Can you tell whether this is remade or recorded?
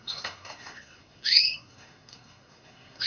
remade